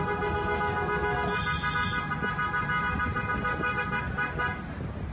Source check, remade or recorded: recorded